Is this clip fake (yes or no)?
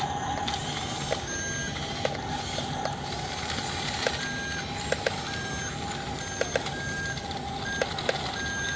no